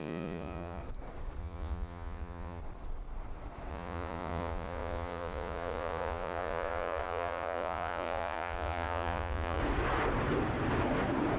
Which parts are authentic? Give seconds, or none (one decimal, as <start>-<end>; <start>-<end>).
0.8-1.4; 2.6-3.7; 9.6-11.4